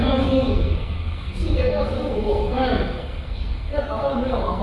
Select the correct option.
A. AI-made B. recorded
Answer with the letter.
A